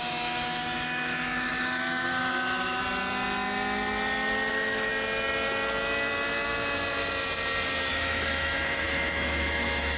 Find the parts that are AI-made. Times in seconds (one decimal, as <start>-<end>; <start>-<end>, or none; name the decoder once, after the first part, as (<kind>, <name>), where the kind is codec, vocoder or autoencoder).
0.0-2.8 (autoencoder, DAC-VAE); 4.5-4.9; 7.9-10.0